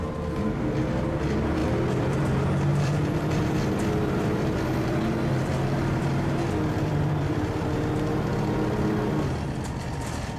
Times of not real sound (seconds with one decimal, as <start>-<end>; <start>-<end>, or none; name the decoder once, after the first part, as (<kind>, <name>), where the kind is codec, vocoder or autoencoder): 1.6-2.3 (vocoder, BigVGAN v2); 2.7-7.8